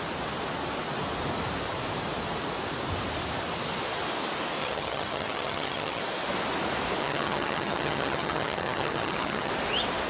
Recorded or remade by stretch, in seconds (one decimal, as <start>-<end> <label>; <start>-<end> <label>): 0.0-4.6 recorded; 4.6-6.0 remade; 6.0-7.0 recorded; 7.0-9.5 remade; 9.5-10.1 recorded